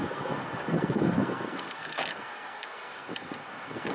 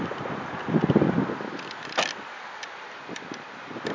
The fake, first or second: first